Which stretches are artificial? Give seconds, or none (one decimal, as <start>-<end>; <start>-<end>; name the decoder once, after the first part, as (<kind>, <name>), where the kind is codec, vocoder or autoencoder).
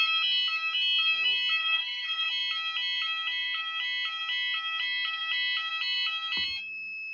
1.6-2.3 (codec, SNAC)